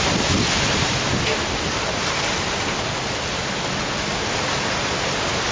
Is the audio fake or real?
real